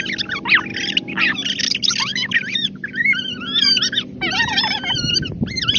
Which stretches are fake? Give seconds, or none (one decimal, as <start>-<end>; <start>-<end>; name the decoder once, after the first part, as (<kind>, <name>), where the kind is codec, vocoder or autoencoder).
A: 0.0-5.8 (vocoder, BigVGAN v2)